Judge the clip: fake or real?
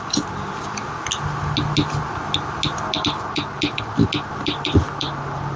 real